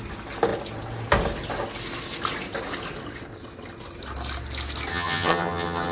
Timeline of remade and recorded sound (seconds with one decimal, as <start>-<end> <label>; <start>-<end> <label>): 0.0-4.9 recorded; 4.9-5.9 remade